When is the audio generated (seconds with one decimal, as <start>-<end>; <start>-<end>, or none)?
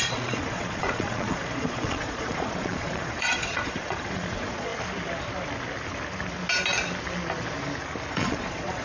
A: 0.0-4.7; 8.1-8.8